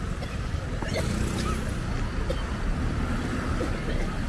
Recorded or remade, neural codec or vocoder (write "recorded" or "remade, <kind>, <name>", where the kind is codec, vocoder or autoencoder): recorded